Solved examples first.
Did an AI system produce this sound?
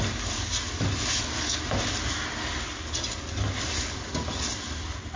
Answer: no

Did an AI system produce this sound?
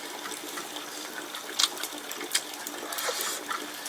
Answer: no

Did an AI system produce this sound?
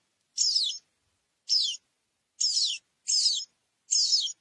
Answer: no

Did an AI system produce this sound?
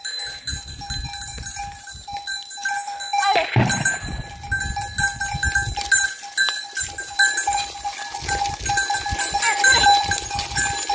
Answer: no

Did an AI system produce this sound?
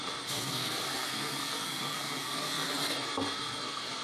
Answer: yes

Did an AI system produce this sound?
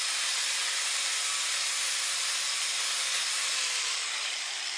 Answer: no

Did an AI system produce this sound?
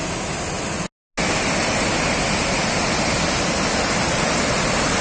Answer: no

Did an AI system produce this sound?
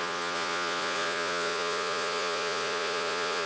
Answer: yes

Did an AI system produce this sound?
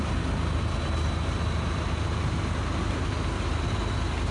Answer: no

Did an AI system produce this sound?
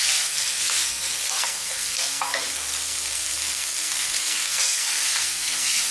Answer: yes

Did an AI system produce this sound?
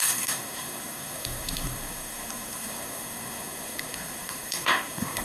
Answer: yes